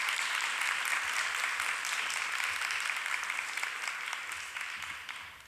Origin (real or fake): real